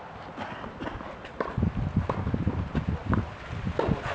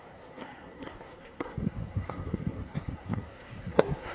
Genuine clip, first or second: first